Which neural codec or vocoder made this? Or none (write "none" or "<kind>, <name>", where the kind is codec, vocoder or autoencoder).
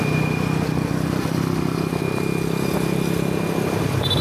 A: none